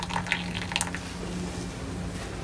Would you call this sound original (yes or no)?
yes